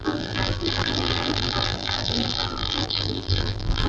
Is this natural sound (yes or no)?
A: no